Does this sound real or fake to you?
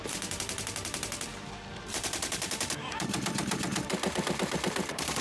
fake